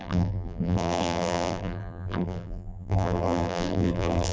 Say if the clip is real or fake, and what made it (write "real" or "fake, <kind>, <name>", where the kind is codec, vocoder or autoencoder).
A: fake, vocoder, BigVGAN v2